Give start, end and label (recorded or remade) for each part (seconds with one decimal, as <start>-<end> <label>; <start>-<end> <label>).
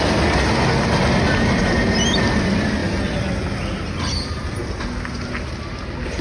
0.0-6.2 recorded